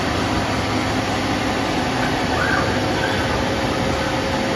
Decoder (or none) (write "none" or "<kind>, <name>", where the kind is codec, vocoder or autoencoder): vocoder, BigVGAN v2